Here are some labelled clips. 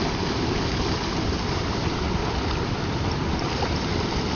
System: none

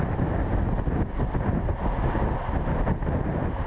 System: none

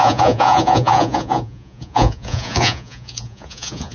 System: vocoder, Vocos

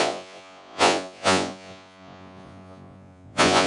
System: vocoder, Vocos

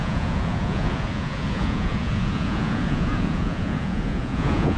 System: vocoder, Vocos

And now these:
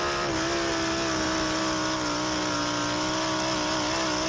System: none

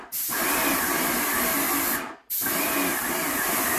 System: none